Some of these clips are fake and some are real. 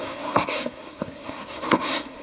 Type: fake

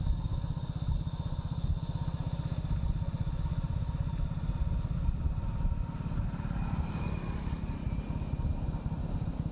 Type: real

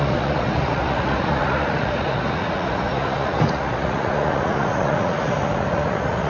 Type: fake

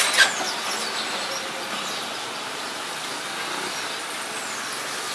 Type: real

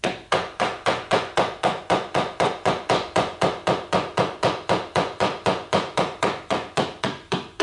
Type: fake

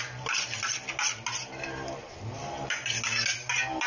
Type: real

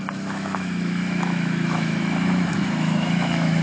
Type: fake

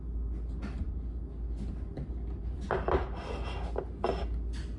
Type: real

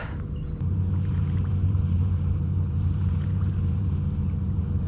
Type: fake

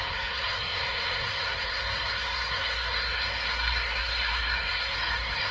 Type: fake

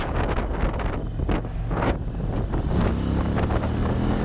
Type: real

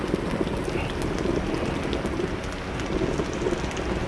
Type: real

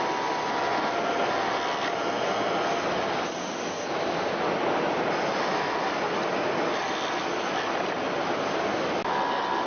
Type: real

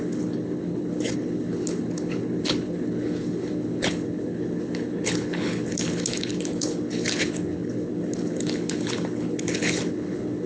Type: fake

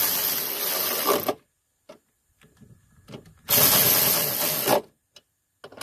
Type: real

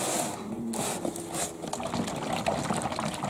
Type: real